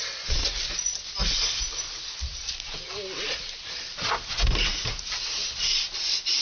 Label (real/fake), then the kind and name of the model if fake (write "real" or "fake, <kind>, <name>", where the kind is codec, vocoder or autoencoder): real